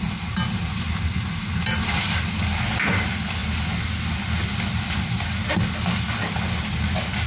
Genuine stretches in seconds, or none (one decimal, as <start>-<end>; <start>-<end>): 0.0-7.3